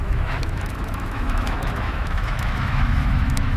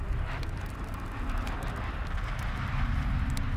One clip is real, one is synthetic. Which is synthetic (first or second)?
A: first